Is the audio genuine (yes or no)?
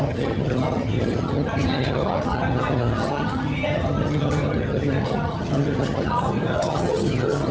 no